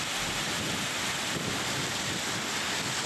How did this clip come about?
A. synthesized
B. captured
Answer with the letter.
B